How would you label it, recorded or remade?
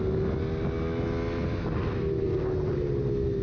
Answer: recorded